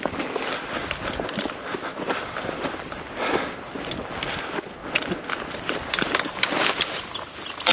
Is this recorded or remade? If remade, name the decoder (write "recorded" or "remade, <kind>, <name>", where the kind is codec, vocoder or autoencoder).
recorded